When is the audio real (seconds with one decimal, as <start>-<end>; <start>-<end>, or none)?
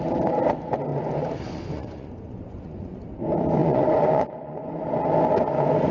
0.0-0.9; 3.0-3.6; 4.8-5.9